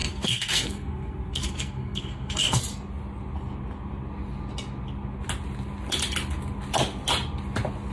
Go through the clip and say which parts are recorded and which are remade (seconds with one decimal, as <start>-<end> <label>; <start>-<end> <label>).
0.0-2.6 remade; 2.6-7.9 recorded